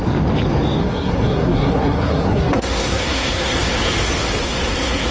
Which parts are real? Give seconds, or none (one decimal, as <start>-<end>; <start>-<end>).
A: 0.0-0.8; 3.9-4.4